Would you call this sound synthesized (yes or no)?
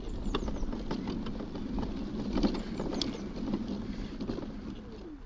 no